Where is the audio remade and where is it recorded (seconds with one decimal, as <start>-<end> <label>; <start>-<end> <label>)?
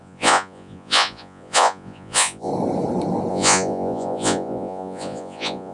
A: 0.0-2.5 remade; 2.5-3.3 recorded; 3.3-5.7 remade